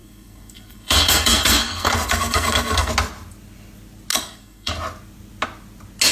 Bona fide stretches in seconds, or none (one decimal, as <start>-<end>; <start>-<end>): 2.9-4.1; 4.7-6.1